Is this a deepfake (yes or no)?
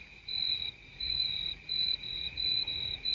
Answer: yes